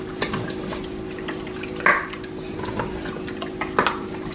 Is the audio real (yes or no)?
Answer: yes